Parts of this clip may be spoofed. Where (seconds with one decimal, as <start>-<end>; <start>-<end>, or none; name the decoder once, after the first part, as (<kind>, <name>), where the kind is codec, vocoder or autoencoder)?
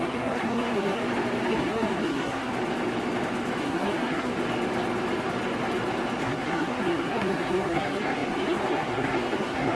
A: 0.0-1.0 (codec, SNAC); 1.5-2.5; 3.6-4.3; 6.2-9.7